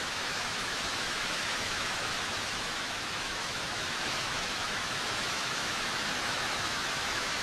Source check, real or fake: fake